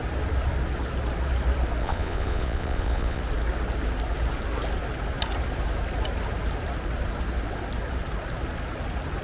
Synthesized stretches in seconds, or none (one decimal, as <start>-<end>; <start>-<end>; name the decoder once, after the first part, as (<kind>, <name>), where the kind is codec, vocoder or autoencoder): 1.8-3.2 (vocoder, Vocos)